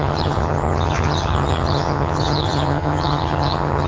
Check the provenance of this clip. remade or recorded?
remade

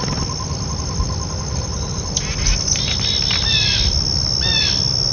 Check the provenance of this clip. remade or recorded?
recorded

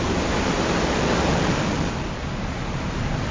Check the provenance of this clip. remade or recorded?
remade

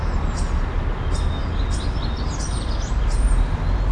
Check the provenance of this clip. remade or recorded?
recorded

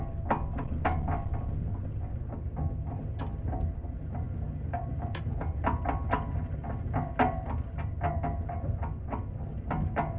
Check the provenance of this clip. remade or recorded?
recorded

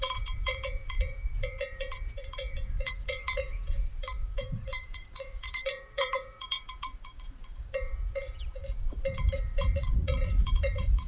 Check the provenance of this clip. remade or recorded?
remade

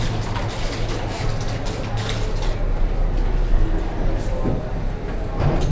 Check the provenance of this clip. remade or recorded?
recorded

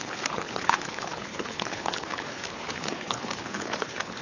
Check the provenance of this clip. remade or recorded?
remade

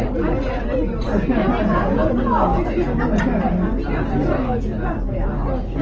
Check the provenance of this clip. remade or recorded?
recorded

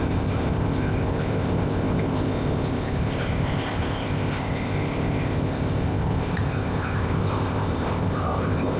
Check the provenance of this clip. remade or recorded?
remade